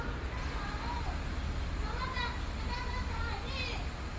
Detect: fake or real real